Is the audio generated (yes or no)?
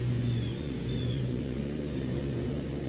yes